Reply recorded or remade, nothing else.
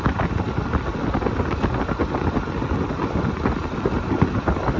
recorded